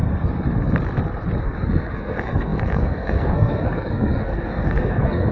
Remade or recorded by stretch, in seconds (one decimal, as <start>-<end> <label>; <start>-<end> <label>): 0.0-1.4 recorded; 1.4-5.3 remade